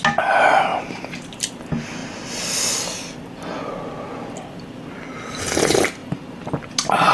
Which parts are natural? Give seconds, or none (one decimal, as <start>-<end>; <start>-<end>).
0.0-0.7; 1.5-6.0; 6.5-7.1